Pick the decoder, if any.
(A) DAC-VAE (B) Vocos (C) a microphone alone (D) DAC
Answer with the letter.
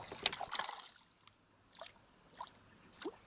C